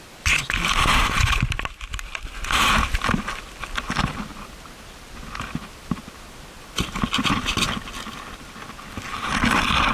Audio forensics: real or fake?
real